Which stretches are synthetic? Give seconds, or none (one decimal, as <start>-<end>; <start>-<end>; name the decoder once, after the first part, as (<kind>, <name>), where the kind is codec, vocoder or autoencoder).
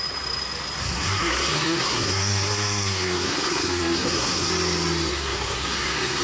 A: 0.8-4.5 (codec, SNAC); 5.1-6.2